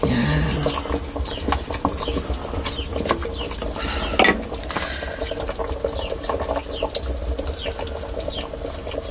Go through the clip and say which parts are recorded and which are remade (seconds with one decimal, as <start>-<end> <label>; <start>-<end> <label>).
0.0-9.1 recorded